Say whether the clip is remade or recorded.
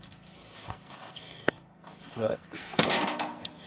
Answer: remade